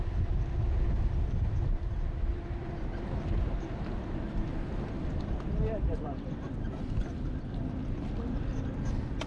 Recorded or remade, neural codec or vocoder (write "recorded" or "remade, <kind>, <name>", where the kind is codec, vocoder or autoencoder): recorded